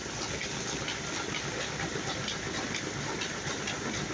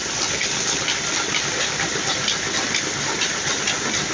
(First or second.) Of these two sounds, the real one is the first